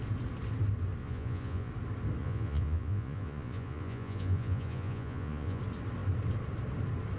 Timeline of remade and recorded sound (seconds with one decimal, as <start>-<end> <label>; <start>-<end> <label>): 0.0-1.0 recorded; 1.0-1.7 remade; 1.7-2.2 recorded; 2.2-5.6 remade; 5.6-7.2 recorded